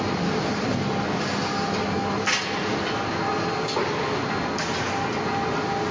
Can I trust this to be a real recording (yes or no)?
yes